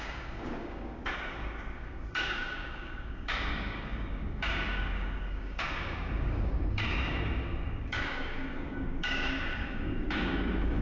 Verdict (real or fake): fake